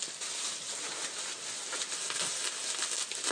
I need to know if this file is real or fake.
real